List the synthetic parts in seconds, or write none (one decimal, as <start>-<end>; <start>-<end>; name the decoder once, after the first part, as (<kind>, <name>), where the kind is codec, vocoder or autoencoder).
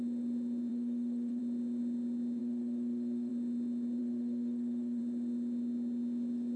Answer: 0.7-1.4 (autoencoder, DAC-VAE); 2.4-3.3; 4.0-5.0